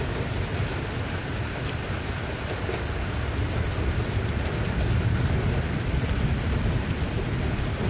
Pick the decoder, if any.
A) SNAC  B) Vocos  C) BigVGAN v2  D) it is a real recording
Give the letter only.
D